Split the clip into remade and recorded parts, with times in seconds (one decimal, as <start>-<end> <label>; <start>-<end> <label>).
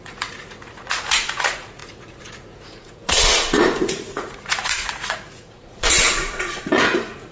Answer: 0.0-7.3 remade